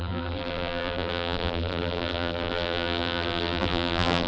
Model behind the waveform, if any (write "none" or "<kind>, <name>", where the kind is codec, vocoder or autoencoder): vocoder, BigVGAN v2